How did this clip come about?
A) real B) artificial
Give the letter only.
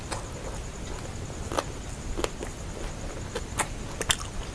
A